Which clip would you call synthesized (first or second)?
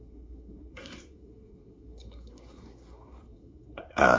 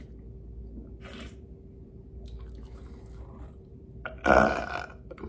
first